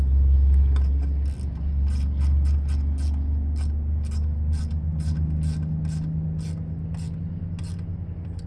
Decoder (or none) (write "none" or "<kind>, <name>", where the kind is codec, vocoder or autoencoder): none